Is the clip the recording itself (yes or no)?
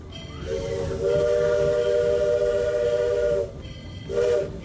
yes